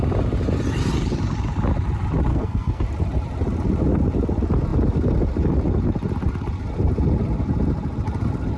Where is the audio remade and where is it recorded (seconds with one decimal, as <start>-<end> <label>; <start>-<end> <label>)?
0.0-2.3 recorded; 2.3-2.8 remade; 2.8-8.6 recorded